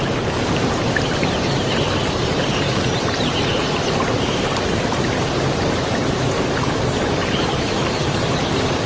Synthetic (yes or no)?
yes